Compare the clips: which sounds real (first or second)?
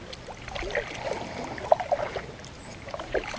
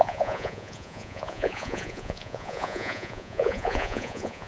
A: first